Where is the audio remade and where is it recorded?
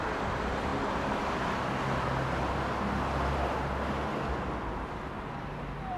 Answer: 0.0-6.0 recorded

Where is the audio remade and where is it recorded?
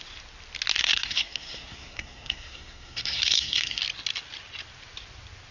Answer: 0.0-0.8 recorded; 0.8-3.8 remade; 3.8-5.5 recorded